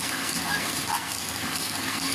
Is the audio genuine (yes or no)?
no